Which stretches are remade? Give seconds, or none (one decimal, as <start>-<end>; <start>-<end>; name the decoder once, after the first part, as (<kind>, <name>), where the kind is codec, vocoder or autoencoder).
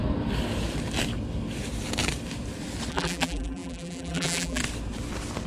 2.9-4.6 (vocoder, BigVGAN v2)